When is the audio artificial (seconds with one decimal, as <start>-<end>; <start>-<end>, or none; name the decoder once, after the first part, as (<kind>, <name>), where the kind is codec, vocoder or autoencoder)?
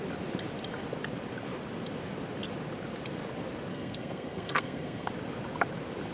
3.7-5.1 (codec, SNAC)